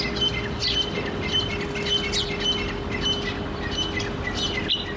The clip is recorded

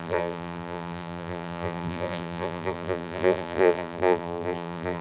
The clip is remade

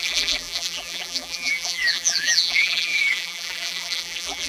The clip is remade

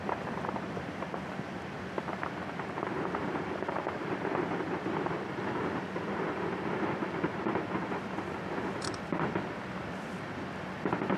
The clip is remade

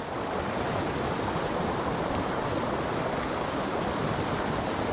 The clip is recorded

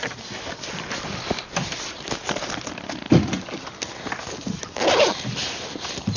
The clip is recorded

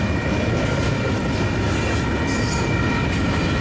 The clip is recorded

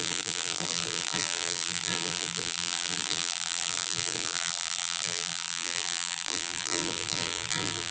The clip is remade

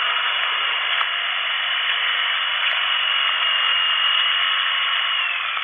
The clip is remade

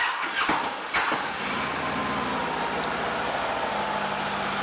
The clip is recorded